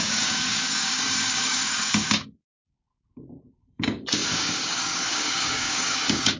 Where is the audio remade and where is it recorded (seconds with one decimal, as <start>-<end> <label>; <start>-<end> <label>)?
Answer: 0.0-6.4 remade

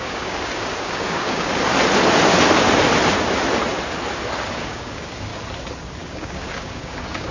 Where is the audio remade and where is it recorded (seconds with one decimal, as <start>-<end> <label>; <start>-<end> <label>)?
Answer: 0.0-1.5 remade; 1.5-4.5 recorded; 4.5-5.3 remade; 5.3-6.0 recorded; 6.0-7.3 remade

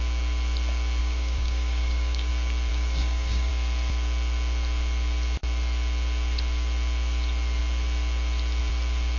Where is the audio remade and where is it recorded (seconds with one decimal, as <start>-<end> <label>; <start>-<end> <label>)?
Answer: 0.0-1.0 recorded; 1.0-2.3 remade; 2.3-2.7 recorded; 2.7-3.5 remade; 3.5-9.2 recorded

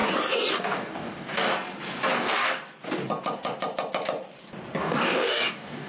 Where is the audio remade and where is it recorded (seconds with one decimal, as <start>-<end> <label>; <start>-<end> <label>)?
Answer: 0.0-0.5 recorded; 0.5-1.5 remade; 1.5-2.1 recorded; 2.1-2.6 remade; 2.6-4.8 recorded; 4.8-5.9 remade

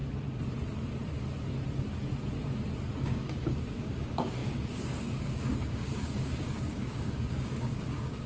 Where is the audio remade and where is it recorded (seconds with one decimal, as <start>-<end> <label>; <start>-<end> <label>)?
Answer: 0.0-3.0 recorded; 3.0-8.3 remade

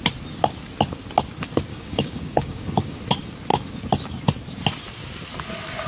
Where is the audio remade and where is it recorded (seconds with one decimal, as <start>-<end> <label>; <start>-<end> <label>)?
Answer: 0.0-1.7 recorded; 1.7-3.0 remade; 3.0-5.9 recorded

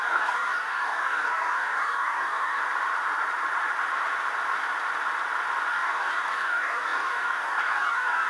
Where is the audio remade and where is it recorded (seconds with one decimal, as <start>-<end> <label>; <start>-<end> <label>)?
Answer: 0.0-2.6 remade; 2.6-5.7 recorded; 5.7-8.3 remade